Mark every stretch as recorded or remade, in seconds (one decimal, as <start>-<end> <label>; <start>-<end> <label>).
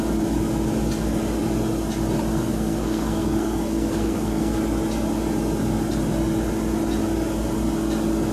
0.0-2.3 recorded; 2.3-4.6 remade; 4.6-8.3 recorded